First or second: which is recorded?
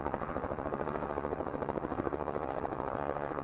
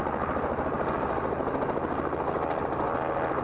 second